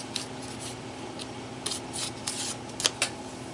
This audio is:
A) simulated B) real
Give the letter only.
B